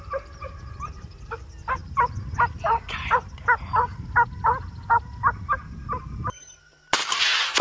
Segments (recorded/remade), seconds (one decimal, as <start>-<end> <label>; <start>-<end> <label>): 0.0-7.6 recorded